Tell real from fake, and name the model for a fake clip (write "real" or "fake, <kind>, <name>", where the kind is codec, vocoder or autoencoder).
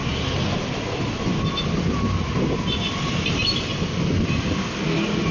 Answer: real